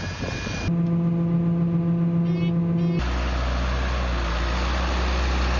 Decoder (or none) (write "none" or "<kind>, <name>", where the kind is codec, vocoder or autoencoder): none